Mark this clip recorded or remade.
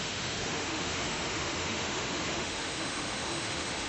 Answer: remade